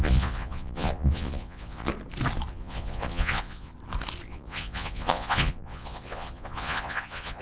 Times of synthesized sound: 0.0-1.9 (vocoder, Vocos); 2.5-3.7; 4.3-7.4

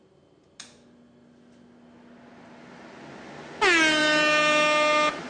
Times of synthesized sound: none

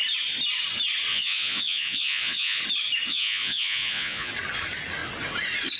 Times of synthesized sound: 1.1-2.6 (vocoder, Vocos); 3.1-4.3

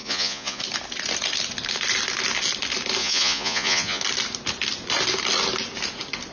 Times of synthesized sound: 0.0-0.6 (vocoder, Vocos); 3.0-4.0

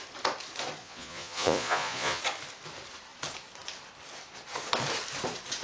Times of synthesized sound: 0.8-2.2 (vocoder, Vocos)

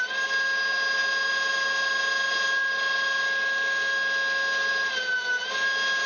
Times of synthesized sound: none

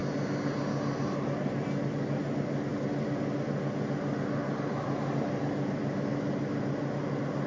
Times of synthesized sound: none